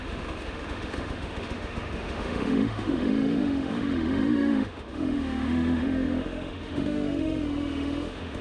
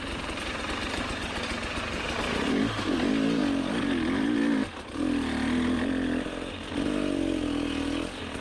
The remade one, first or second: first